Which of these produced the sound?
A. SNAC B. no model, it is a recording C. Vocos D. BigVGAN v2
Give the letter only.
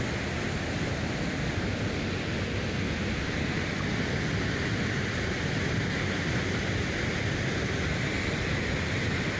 B